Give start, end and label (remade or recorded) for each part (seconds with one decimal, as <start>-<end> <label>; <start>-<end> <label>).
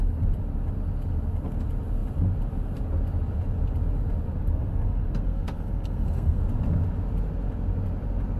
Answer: 0.0-4.4 recorded; 4.4-6.4 remade; 6.4-8.4 recorded